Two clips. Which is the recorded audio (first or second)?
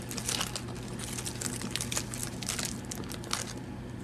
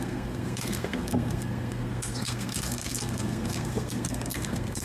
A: first